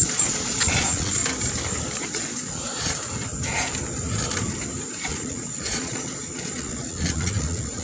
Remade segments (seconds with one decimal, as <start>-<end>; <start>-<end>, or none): 0.0-1.2; 2.0-3.0; 4.9-7.8